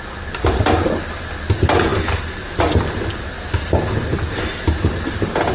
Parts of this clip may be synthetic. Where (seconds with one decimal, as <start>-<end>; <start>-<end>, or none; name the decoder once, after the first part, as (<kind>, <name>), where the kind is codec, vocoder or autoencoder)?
none